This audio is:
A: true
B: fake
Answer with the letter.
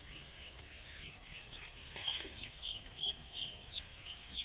B